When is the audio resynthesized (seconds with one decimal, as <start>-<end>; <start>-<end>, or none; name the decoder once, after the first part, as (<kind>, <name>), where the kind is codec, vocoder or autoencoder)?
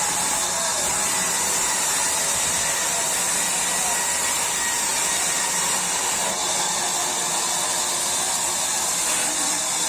0.0-4.9 (vocoder, BigVGAN v2); 9.2-9.9